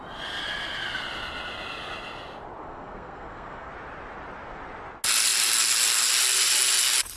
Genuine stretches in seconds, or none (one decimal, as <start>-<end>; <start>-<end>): 0.0-2.6; 3.7-7.2

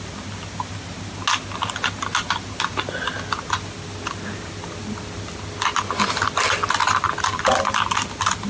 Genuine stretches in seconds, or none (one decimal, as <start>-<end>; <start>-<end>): 0.0-6.8; 7.6-8.5

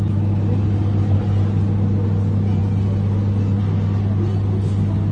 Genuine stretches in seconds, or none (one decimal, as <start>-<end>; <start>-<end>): 0.0-5.1

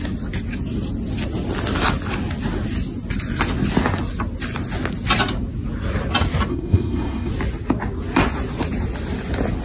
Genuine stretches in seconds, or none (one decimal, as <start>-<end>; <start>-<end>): 0.0-6.5; 7.3-9.6